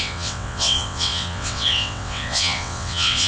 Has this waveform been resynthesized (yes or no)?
yes